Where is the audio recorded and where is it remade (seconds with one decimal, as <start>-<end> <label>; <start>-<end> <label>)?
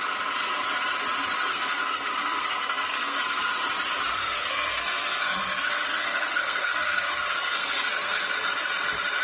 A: 0.0-1.5 recorded; 1.5-3.5 remade; 3.5-4.2 recorded; 4.2-8.2 remade; 8.2-9.2 recorded